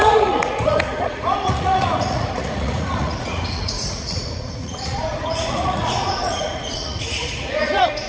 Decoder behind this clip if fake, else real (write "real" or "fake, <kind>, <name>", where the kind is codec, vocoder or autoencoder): fake, vocoder, Vocos